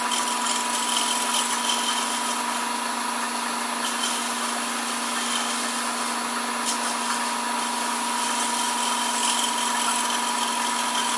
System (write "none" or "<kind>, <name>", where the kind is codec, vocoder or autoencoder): none